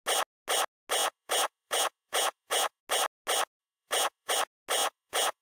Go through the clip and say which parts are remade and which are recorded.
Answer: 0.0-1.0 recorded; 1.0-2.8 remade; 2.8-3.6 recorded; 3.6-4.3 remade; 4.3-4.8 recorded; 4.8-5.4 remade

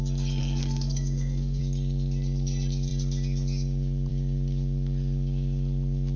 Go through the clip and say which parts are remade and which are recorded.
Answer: 0.0-0.4 recorded; 0.4-1.6 remade; 1.6-6.2 recorded

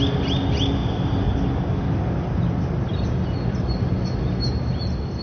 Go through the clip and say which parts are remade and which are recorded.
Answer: 0.0-5.2 recorded

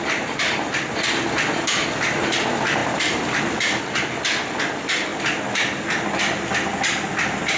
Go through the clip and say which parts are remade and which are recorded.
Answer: 0.0-2.8 remade; 2.8-3.4 recorded; 3.4-5.1 remade; 5.1-7.6 recorded

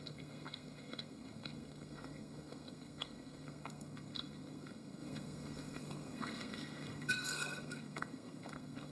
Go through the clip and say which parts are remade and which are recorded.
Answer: 0.0-8.9 remade

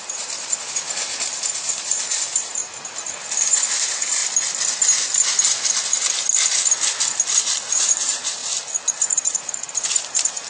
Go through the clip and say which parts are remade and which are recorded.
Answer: 0.0-2.6 remade; 2.6-3.5 recorded; 3.5-4.2 remade; 4.2-7.7 recorded; 7.7-8.4 remade; 8.4-8.9 recorded; 8.9-10.5 remade